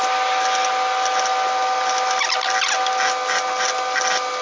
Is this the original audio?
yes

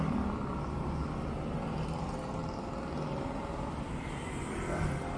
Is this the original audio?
yes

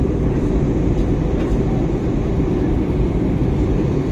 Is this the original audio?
yes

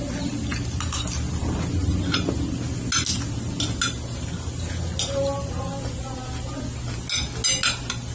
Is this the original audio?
yes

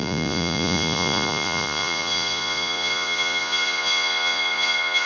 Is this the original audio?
no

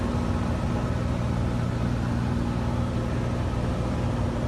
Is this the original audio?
yes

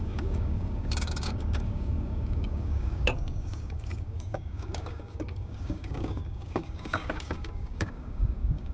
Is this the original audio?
no